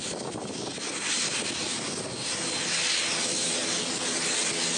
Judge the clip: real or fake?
real